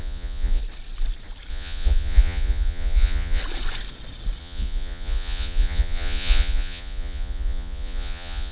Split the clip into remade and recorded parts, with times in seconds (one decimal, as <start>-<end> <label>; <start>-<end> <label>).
0.0-0.6 remade; 0.6-1.5 recorded; 1.5-3.4 remade; 3.4-4.4 recorded; 4.4-8.5 remade

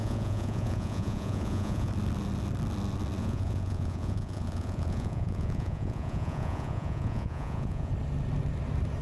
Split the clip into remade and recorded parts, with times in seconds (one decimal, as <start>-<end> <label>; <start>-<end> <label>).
0.0-1.9 remade; 1.9-3.2 recorded; 3.2-7.9 remade; 7.9-9.0 recorded

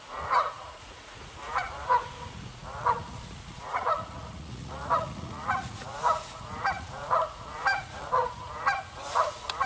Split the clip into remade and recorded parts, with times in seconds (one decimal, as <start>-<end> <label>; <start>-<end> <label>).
0.0-9.7 remade

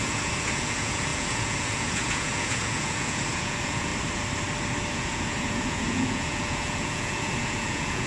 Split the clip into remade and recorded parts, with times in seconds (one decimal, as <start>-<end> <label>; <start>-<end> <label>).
0.0-3.9 remade; 3.9-4.9 recorded; 4.9-8.1 remade

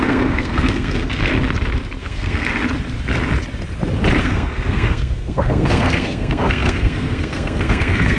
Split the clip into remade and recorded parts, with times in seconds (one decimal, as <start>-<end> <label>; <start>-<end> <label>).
0.0-1.3 remade; 1.3-2.0 recorded; 2.0-2.5 remade; 2.5-4.2 recorded; 4.2-8.2 remade

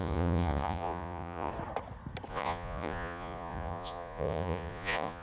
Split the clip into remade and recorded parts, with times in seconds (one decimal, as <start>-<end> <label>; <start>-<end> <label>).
0.0-1.5 remade; 1.5-2.3 recorded; 2.3-5.2 remade